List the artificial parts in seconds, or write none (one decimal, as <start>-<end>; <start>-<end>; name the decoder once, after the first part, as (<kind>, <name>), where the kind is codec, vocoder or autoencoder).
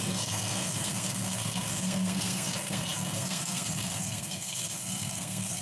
0.0-5.6 (codec, SNAC)